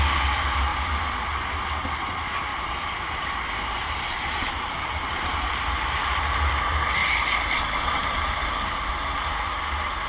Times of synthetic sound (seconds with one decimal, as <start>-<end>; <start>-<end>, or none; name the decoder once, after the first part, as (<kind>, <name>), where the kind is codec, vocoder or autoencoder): 2.5-6.6 (vocoder, BigVGAN v2); 8.0-8.9